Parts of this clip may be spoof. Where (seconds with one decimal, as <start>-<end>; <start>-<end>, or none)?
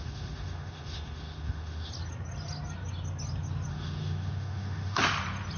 0.0-1.9; 3.7-5.0